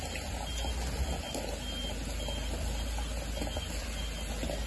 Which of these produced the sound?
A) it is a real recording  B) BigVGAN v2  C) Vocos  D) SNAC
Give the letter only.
A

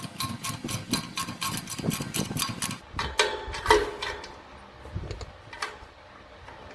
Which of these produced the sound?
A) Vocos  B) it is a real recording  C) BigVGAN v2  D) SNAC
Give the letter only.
B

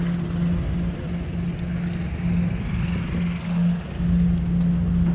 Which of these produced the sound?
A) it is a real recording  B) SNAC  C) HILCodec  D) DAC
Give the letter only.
A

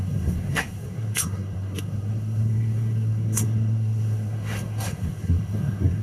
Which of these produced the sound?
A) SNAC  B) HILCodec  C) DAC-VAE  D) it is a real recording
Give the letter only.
A